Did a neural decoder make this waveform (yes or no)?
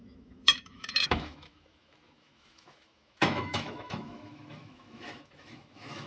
yes